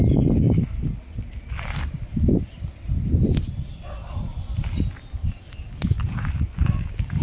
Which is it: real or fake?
real